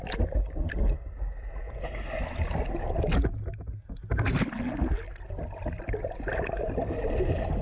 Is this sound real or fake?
real